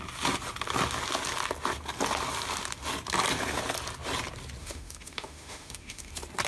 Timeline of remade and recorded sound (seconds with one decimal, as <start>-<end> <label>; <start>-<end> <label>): 0.0-4.6 recorded; 4.6-6.1 remade; 6.1-6.5 recorded